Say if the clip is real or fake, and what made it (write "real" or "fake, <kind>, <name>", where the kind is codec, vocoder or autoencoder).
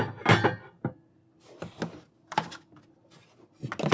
real